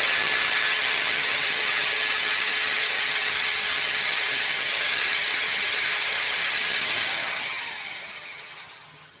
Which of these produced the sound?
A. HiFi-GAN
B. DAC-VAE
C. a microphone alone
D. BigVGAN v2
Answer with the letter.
A